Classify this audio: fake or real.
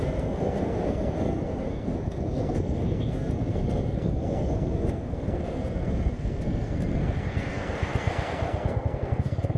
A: fake